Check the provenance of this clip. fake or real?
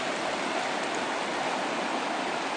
real